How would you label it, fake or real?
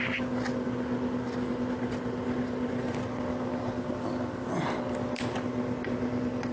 real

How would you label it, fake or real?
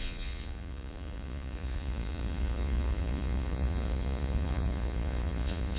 fake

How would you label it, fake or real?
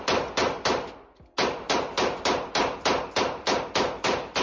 real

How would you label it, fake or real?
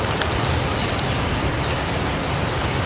real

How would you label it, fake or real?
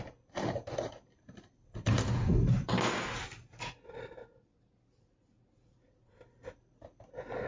real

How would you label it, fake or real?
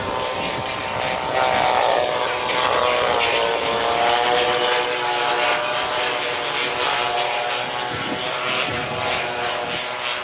real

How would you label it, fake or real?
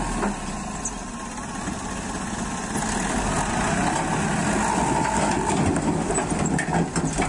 real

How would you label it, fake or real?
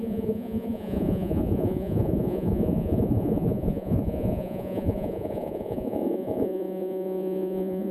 fake